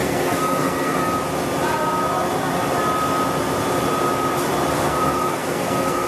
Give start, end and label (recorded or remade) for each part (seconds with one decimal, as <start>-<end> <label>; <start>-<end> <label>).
0.0-1.0 remade; 1.0-4.7 recorded; 4.7-6.1 remade

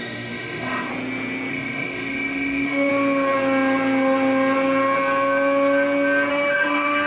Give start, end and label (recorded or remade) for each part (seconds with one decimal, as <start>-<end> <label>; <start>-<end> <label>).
0.0-0.9 remade; 0.9-1.5 recorded; 1.5-2.9 remade; 2.9-6.3 recorded; 6.3-7.1 remade